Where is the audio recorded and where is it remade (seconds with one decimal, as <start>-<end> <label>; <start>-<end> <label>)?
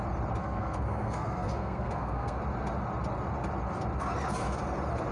0.0-0.4 recorded; 0.4-2.4 remade; 2.4-5.1 recorded